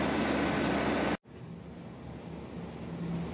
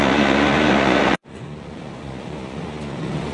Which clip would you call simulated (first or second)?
second